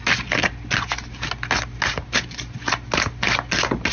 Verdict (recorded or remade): recorded